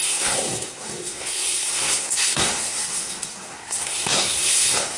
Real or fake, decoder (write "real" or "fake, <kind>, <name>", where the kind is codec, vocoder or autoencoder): fake, codec, SNAC